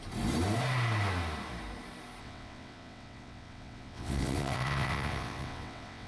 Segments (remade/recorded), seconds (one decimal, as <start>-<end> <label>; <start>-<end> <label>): 0.0-2.2 recorded; 2.2-6.1 remade